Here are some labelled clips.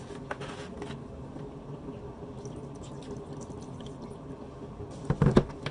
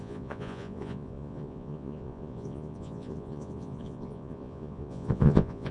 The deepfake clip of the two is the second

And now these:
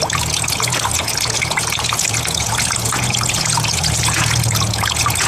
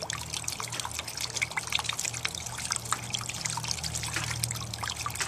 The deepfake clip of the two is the first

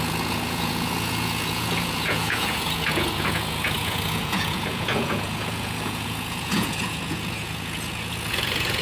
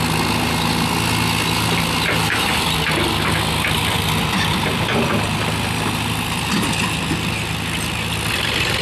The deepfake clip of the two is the first